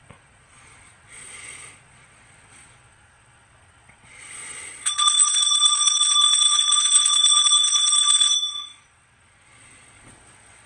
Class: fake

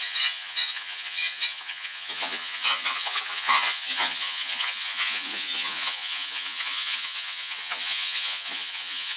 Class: fake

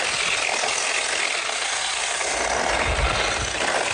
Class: real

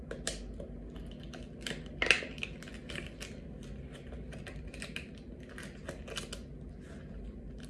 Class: real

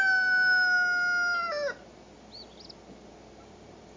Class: real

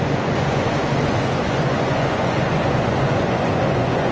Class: fake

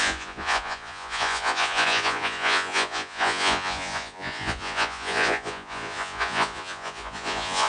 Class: fake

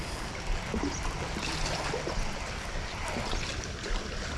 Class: real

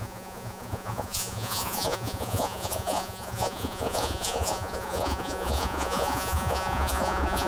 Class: fake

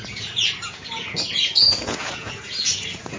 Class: fake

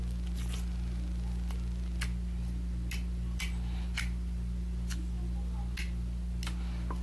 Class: real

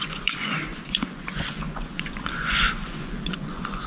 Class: fake